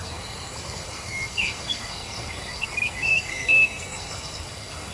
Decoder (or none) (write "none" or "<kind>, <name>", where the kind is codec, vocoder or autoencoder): codec, SNAC